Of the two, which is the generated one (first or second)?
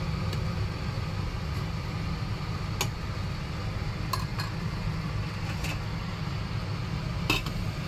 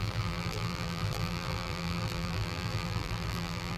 second